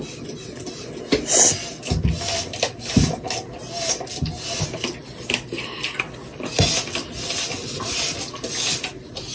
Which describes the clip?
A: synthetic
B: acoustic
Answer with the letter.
B